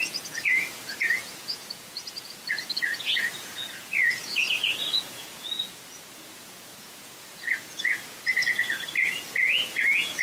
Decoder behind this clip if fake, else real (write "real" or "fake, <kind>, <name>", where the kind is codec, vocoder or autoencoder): fake, vocoder, Vocos